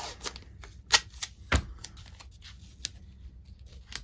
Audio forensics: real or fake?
real